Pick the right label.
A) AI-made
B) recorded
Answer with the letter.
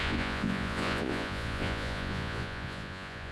A